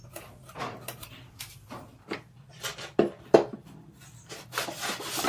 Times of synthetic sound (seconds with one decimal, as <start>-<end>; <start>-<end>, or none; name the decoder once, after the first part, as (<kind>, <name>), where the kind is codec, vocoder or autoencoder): 1.9-4.3 (vocoder, BigVGAN v2)